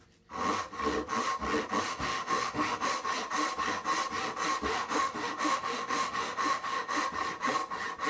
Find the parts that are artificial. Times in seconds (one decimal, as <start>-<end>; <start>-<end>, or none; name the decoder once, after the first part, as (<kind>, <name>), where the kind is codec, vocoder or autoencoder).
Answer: 1.9-2.9 (autoencoder, DAC-VAE); 4.7-7.0

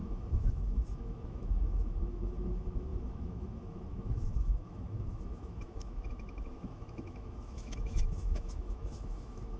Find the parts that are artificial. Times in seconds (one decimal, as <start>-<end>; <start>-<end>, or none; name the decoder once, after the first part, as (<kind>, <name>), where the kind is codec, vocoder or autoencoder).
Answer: 0.0-9.6 (autoencoder, DAC-VAE)

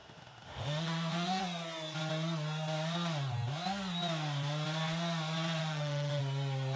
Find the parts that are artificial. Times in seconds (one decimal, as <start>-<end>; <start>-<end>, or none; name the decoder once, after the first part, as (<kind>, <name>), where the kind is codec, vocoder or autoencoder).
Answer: 0.0-1.4 (autoencoder, DAC-VAE); 5.6-6.2

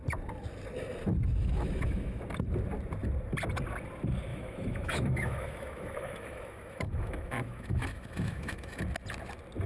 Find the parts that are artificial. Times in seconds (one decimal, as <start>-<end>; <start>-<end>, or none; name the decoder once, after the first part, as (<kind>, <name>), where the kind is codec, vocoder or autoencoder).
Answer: 1.4-2.2 (autoencoder, DAC-VAE); 4.3-8.8

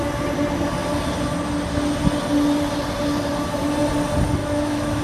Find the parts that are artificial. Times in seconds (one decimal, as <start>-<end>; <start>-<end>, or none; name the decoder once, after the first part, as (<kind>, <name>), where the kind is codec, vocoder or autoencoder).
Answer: 4.4-5.0 (autoencoder, DAC-VAE)

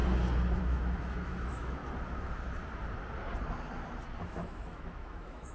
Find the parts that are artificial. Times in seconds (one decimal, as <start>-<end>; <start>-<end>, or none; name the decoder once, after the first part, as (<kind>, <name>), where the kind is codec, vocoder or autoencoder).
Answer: 0.6-1.8 (autoencoder, DAC-VAE); 4.3-5.5

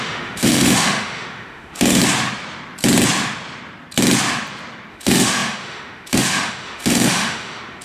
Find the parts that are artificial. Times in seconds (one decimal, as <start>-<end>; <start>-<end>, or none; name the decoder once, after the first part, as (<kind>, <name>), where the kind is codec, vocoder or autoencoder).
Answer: 0.0-2.0 (autoencoder, DAC-VAE); 4.9-7.8